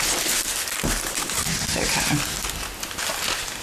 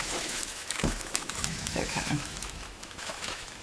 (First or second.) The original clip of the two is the first